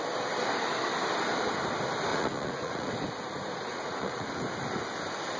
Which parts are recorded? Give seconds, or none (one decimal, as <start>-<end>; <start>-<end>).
0.0-2.1; 2.9-3.7; 4.4-5.4